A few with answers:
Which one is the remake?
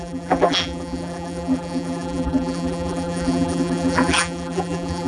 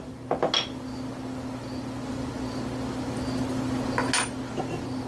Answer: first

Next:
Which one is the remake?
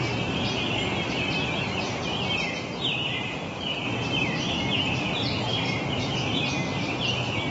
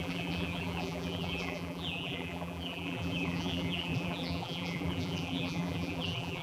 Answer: second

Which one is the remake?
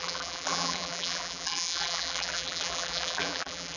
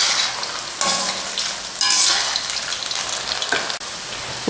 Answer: first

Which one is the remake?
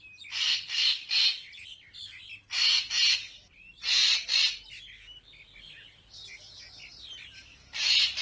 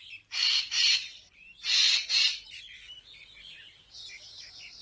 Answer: second